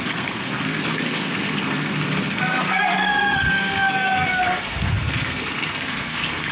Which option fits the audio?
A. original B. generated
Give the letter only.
B